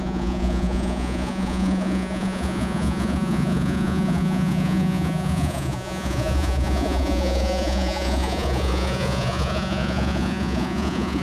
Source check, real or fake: fake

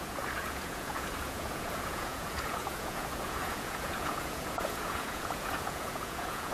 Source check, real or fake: fake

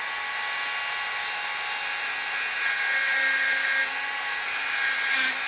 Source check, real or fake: real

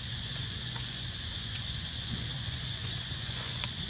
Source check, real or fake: fake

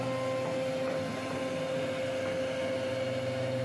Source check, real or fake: real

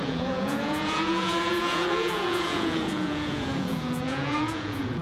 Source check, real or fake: fake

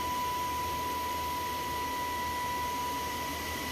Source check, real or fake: real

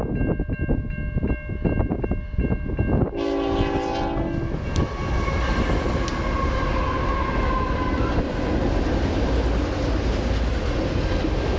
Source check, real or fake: real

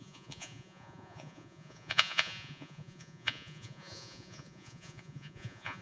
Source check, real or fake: fake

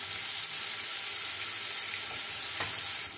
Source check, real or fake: real